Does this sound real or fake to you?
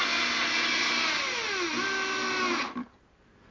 real